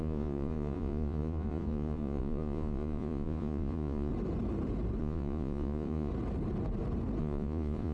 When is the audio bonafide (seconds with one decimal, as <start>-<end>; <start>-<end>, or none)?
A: 4.1-5.0; 6.1-7.2

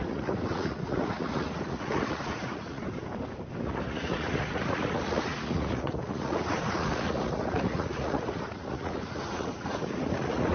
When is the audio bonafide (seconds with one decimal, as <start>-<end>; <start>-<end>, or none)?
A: 2.8-3.6